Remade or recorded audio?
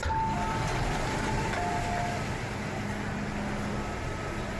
recorded